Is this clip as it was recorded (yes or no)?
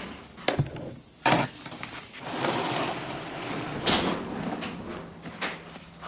yes